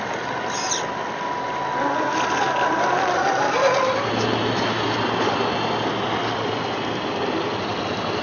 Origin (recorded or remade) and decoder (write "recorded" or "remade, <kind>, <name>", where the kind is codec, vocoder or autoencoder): recorded